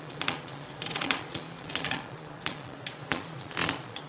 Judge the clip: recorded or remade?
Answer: remade